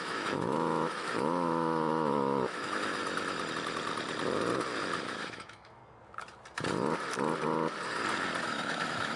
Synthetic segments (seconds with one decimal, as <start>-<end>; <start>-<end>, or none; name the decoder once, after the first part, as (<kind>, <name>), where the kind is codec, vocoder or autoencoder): 0.0-3.0 (autoencoder, DAC-VAE); 5.0-5.8; 8.4-9.2